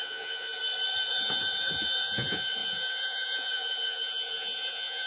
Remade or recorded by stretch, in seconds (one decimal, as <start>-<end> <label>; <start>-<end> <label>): 0.0-0.6 remade; 0.6-1.1 recorded; 1.1-5.1 remade